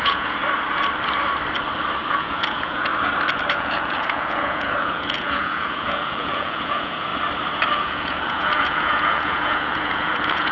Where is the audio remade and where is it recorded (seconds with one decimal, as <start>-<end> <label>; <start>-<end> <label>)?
0.0-0.4 remade; 0.4-2.1 recorded; 2.1-2.9 remade; 2.9-3.5 recorded; 3.5-7.1 remade; 7.1-7.7 recorded; 7.7-10.5 remade